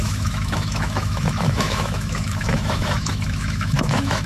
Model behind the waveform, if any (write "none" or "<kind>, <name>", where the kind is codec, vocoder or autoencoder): autoencoder, DAC-VAE